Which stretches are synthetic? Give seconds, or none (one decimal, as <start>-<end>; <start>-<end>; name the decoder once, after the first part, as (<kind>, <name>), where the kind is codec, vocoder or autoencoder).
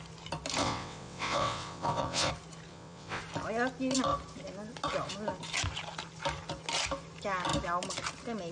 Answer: 0.6-2.3 (vocoder, WaveNeXt); 2.7-3.2